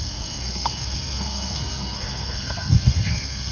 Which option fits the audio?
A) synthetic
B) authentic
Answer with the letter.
A